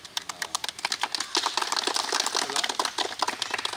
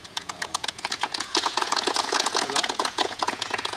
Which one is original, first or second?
first